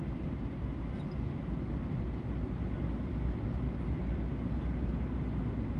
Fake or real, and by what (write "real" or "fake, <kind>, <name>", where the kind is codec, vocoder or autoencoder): real